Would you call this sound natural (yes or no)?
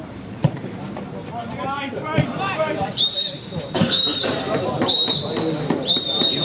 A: no